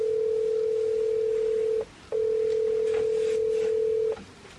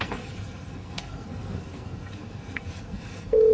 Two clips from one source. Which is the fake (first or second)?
second